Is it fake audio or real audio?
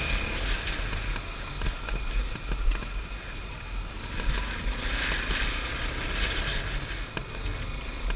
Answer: real